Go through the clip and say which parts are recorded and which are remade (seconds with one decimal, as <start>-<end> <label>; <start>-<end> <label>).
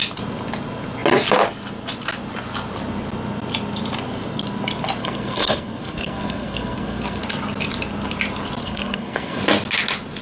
0.0-5.0 recorded; 5.0-7.2 remade; 7.2-8.6 recorded; 8.6-9.4 remade; 9.4-10.2 recorded